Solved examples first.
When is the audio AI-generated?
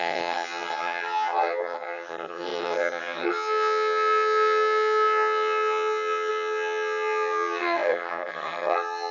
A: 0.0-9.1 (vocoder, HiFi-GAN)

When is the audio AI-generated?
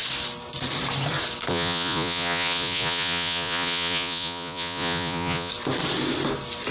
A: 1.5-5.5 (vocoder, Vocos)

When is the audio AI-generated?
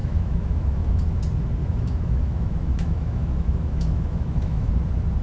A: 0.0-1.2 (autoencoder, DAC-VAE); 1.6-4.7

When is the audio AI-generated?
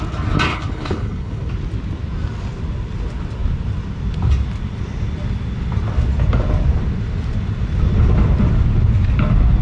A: 0.5-1.5 (codec, HILCodec)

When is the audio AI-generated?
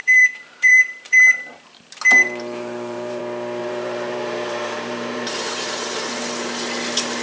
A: 0.0-3.2 (vocoder, BigVGAN v2); 3.6-6.1